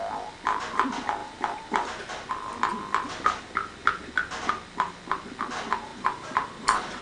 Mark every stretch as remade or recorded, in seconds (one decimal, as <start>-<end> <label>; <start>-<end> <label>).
0.0-1.2 recorded; 1.2-2.0 remade; 2.0-5.9 recorded; 5.9-7.0 remade